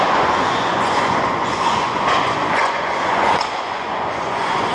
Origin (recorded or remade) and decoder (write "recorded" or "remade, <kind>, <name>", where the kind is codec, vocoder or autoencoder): remade, vocoder, Vocos